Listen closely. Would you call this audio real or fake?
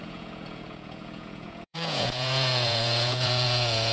fake